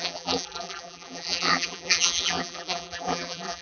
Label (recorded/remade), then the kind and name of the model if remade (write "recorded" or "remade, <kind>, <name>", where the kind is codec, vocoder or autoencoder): remade, vocoder, BigVGAN v2